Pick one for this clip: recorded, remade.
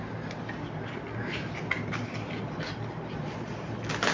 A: recorded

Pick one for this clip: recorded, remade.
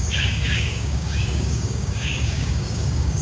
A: remade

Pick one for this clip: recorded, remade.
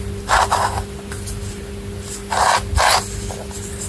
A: recorded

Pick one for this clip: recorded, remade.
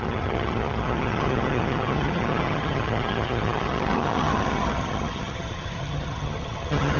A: remade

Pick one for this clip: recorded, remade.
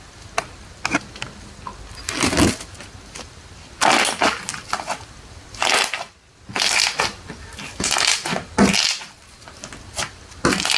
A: recorded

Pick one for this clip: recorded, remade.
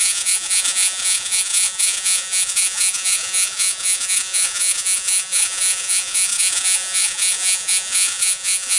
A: remade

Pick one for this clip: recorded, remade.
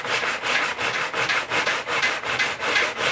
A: recorded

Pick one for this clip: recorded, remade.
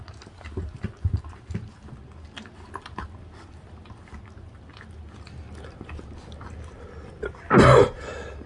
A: recorded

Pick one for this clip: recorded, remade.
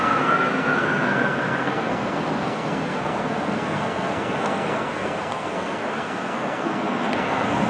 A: remade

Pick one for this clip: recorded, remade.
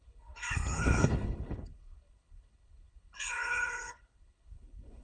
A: remade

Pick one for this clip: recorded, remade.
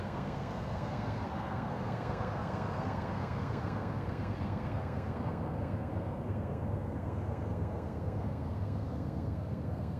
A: remade